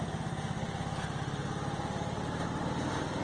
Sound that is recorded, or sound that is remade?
recorded